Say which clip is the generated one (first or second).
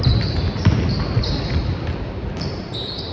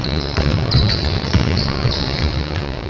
second